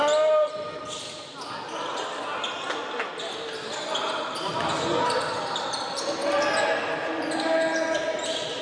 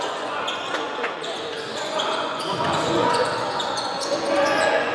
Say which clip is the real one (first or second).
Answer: first